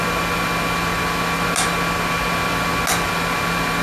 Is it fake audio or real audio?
real